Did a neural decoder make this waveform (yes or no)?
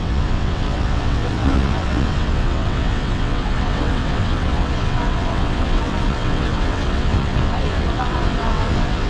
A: yes